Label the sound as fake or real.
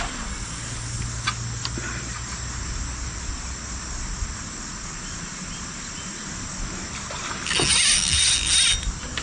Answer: real